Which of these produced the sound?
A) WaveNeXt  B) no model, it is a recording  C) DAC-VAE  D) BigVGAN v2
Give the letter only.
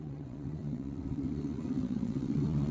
A